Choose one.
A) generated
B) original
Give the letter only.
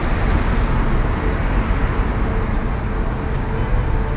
B